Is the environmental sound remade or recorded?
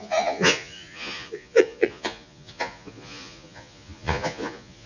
remade